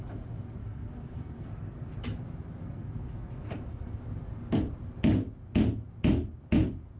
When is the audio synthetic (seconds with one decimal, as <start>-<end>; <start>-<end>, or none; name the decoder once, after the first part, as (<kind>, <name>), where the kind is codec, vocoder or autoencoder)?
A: 0.6-2.0 (codec, SNAC); 2.6-4.0